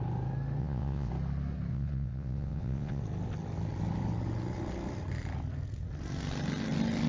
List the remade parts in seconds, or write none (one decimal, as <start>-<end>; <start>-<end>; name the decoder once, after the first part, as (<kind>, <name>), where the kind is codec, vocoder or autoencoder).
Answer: 0.6-1.1 (vocoder, WaveNeXt); 1.7-3.0